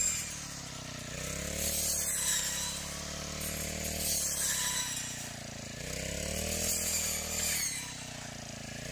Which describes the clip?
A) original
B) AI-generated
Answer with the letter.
A